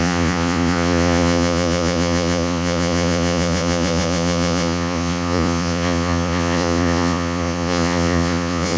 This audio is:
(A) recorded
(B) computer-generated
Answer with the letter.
B